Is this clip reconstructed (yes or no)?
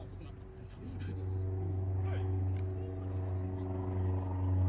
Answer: no